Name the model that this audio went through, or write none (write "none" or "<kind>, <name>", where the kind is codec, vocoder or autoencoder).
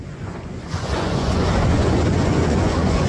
vocoder, Vocos